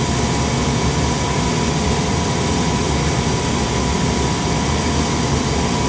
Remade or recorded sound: recorded